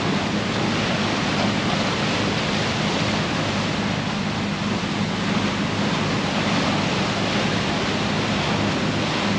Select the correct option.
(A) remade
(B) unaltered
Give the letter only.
B